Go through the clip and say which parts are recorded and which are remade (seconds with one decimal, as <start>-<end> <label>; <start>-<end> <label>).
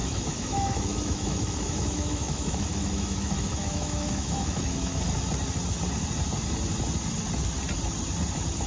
0.0-5.0 remade; 5.0-8.7 recorded